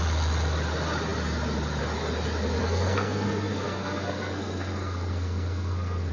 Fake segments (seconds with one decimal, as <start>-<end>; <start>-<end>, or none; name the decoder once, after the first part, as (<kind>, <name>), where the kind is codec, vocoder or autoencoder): 2.6-6.1 (codec, SNAC)